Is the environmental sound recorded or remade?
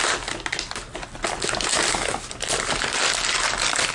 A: recorded